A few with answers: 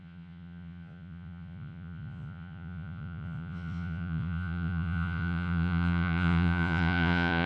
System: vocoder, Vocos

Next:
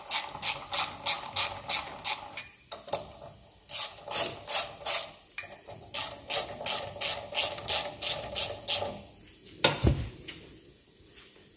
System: none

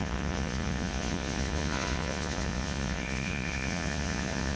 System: vocoder, Vocos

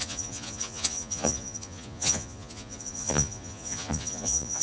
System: vocoder, Vocos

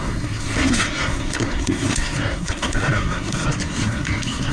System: codec, SNAC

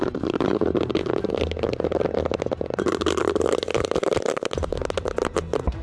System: none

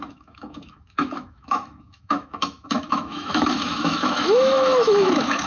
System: autoencoder, DAC-VAE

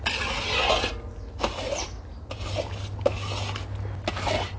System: none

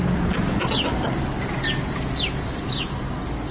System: none